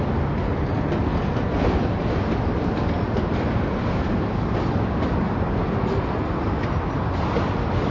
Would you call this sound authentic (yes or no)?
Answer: yes